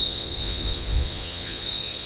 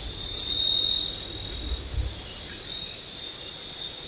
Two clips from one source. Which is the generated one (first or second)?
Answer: first